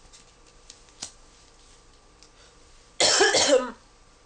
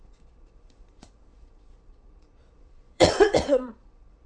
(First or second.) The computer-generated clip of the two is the second